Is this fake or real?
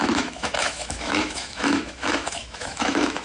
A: fake